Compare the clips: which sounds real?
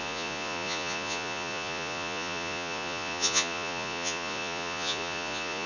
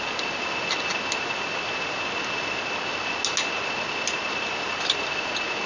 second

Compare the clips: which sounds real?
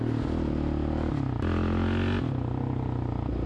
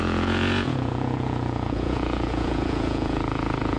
first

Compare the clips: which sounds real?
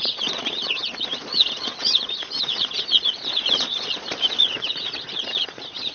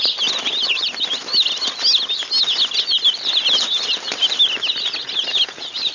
second